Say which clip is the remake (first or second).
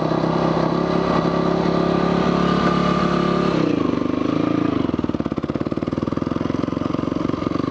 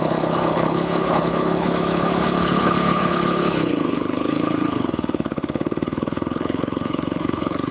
second